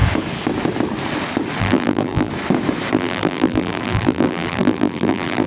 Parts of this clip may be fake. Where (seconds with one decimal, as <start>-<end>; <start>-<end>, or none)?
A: 1.6-2.3; 2.9-5.5